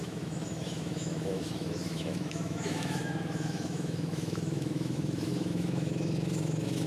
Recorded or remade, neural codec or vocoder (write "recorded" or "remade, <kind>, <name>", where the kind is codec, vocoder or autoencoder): remade, autoencoder, DAC-VAE